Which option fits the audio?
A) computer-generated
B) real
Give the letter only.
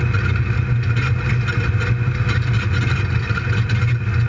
B